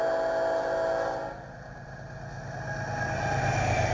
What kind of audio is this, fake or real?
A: real